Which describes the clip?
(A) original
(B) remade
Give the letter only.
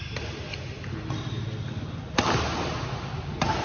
A